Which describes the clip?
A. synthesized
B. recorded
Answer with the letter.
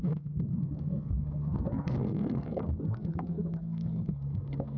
A